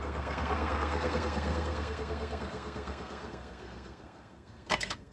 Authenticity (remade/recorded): remade